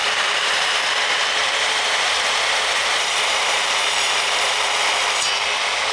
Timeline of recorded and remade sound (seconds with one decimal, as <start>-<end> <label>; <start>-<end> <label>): 0.0-0.8 remade; 0.8-1.4 recorded; 1.4-4.9 remade; 4.9-5.9 recorded